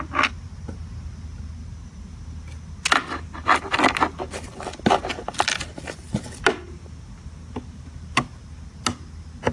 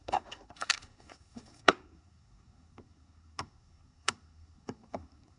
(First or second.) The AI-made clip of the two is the second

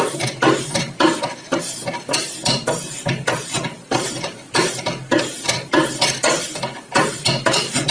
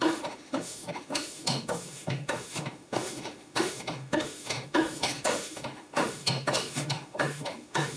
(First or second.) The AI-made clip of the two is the second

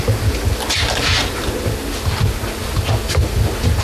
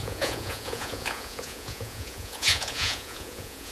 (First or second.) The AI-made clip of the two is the second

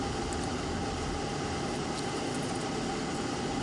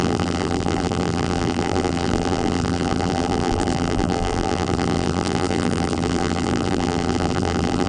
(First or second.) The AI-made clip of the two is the second